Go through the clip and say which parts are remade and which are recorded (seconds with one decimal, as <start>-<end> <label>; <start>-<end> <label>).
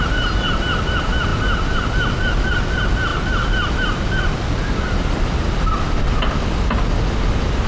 0.0-7.7 recorded